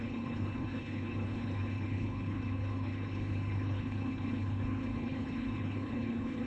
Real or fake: fake